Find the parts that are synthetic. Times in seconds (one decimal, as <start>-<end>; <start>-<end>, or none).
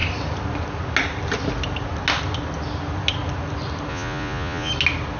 3.9-4.7